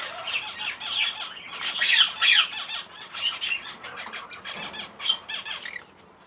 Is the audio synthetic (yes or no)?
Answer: no